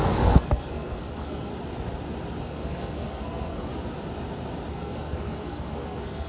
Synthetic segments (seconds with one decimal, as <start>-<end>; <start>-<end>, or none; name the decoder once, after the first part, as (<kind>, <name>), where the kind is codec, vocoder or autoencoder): 0.0-1.5 (codec, SNAC); 2.4-3.7; 4.7-6.3

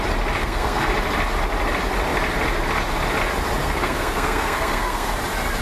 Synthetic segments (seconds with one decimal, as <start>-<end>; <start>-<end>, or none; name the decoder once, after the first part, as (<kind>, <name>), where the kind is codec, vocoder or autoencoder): 0.4-0.9 (codec, SNAC); 3.6-5.1

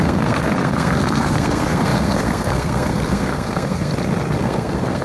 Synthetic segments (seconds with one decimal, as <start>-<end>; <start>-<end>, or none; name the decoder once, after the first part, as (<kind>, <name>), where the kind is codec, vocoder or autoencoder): 0.0-3.9 (codec, SNAC); 4.4-5.0

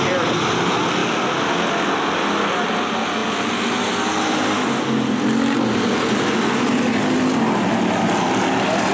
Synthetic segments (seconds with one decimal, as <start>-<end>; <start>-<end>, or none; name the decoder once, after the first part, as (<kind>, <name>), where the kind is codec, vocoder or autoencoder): none